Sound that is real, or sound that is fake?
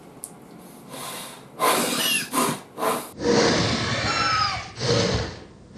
real